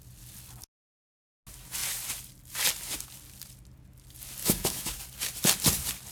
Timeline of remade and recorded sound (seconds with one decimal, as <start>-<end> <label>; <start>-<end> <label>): 0.0-4.4 recorded; 4.4-5.0 remade; 5.0-6.1 recorded